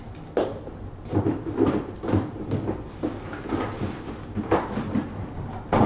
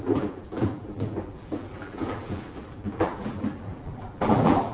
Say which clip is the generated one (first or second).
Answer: second